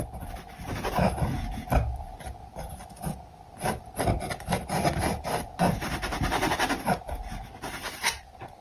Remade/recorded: recorded